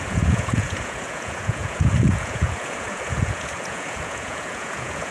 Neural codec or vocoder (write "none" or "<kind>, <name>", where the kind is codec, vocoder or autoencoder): vocoder, Vocos